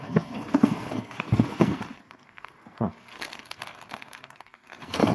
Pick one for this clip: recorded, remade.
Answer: remade